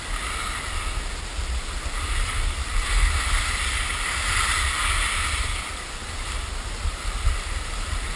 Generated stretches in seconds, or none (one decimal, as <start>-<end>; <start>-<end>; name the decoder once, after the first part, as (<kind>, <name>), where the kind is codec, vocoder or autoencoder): none